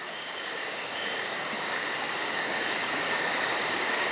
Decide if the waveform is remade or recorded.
remade